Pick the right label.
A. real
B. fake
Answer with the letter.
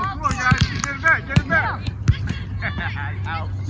A